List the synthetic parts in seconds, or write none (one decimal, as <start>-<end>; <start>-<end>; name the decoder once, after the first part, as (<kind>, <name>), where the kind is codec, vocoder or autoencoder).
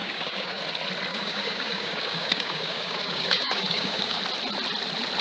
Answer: 0.0-0.6 (codec, DAC); 1.1-4.2